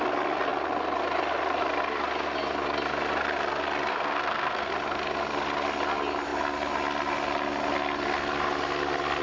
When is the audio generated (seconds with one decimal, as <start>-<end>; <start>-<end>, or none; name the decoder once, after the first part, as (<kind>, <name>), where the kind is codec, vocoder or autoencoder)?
3.9-4.7 (codec, SNAC)